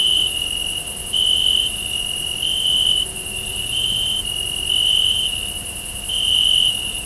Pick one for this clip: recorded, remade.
recorded